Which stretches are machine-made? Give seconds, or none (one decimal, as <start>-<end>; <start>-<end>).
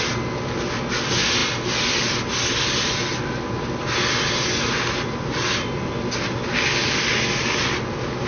none